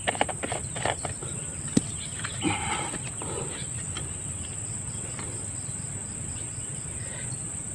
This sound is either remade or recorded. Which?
recorded